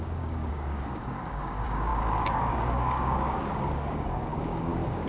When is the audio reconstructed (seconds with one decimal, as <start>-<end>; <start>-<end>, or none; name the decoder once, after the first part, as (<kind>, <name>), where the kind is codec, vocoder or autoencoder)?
0.0-5.1 (codec, DAC)